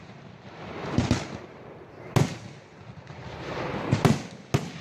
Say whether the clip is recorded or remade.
recorded